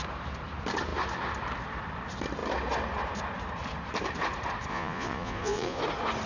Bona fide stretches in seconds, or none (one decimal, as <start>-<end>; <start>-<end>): 0.0-4.7; 5.8-6.3